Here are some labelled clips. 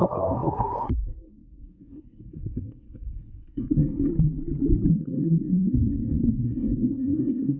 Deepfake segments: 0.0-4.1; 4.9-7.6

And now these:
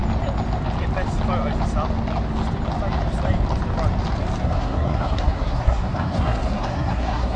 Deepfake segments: 4.4-7.4

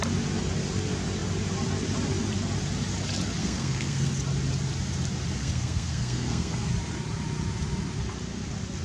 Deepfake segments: 3.4-4.1; 5.4-6.7

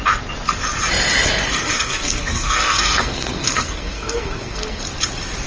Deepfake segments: 1.5-4.8

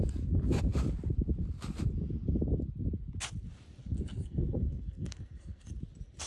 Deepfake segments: 3.8-5.7

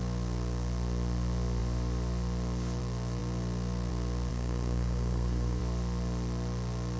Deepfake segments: 4.3-5.6

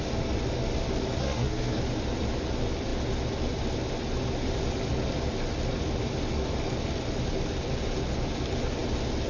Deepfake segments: 1.2-1.8